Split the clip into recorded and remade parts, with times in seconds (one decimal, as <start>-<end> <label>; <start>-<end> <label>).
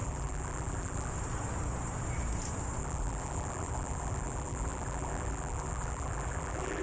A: 0.0-1.1 remade; 1.1-2.8 recorded; 2.8-6.8 remade